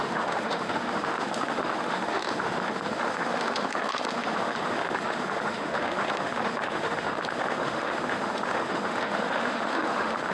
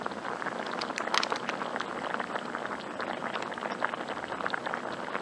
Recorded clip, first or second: second